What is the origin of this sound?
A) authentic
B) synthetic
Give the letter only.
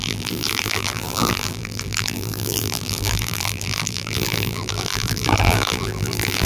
B